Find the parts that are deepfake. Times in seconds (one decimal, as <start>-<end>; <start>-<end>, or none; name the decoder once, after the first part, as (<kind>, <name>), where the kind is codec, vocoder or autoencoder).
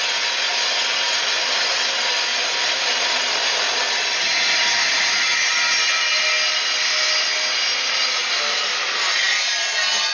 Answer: 2.3-6.2 (vocoder, BigVGAN v2); 8.7-10.1